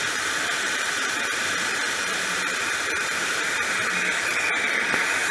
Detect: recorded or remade remade